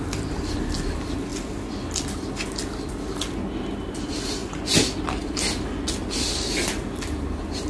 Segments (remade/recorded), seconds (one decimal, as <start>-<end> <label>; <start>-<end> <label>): 0.0-1.3 recorded; 1.3-2.3 remade; 2.3-7.7 recorded